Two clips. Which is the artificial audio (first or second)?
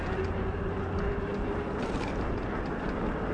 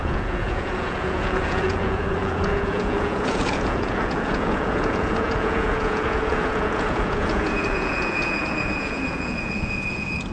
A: second